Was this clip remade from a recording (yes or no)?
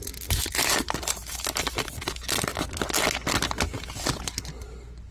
no